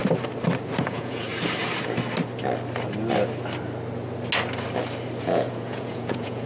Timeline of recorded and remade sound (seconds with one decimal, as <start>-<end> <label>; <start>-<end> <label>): 0.0-0.8 recorded; 0.8-1.3 remade; 1.3-5.2 recorded; 5.2-6.5 remade